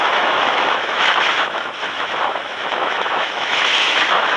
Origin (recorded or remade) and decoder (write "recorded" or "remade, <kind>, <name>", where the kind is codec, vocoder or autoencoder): remade, autoencoder, DAC-VAE